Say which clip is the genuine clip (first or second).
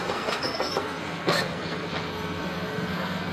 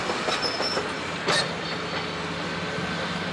second